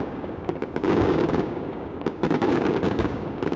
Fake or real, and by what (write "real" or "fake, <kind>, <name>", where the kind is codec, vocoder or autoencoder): fake, codec, DAC